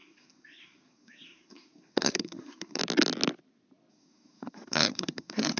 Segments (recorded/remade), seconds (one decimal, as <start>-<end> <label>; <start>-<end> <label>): 0.0-2.8 remade; 2.8-3.9 recorded; 3.9-5.6 remade